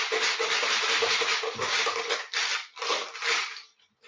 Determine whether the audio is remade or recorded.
recorded